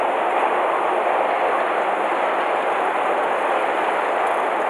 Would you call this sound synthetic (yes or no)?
no